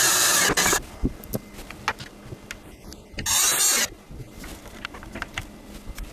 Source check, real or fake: real